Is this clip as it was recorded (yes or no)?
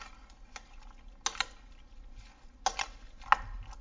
yes